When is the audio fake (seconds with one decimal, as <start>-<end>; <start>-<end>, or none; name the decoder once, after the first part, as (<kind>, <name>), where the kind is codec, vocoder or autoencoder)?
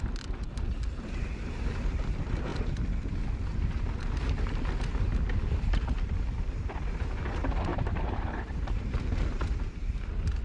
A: 7.7-9.6 (vocoder, BigVGAN v2)